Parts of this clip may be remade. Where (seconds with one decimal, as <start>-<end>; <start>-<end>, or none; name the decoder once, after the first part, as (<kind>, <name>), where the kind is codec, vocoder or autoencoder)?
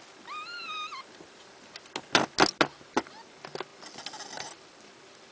none